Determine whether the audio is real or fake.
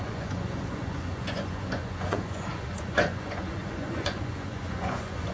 fake